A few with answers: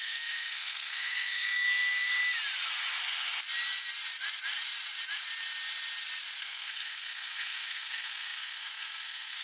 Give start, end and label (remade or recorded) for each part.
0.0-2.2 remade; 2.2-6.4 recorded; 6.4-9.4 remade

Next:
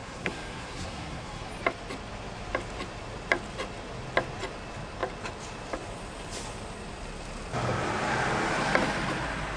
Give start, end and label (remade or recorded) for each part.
0.0-1.5 remade; 1.5-9.6 recorded

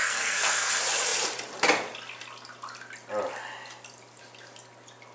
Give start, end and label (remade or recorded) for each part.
0.0-0.7 remade; 0.7-5.1 recorded

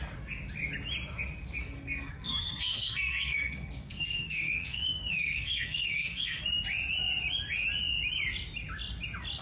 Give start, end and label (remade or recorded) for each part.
0.0-1.6 recorded; 1.6-6.4 remade; 6.4-9.4 recorded